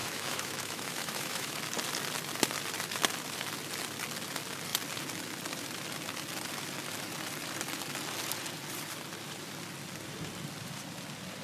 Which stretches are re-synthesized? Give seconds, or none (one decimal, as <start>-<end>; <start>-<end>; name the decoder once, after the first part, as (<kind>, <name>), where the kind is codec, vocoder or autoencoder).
0.0-1.6 (autoencoder, DAC-VAE)